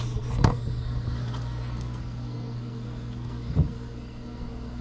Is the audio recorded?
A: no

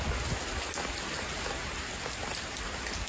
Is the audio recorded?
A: yes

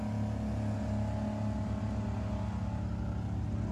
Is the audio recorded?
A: yes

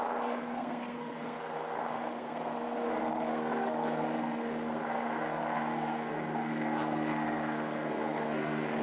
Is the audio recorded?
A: no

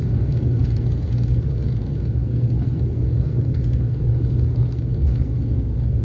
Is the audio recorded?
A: no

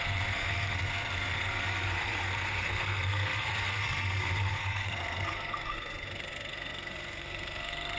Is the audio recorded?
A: no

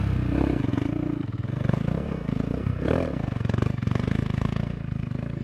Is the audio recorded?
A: no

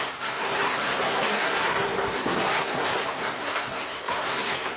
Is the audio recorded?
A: no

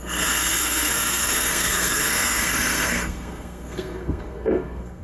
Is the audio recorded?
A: no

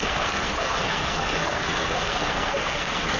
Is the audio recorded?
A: no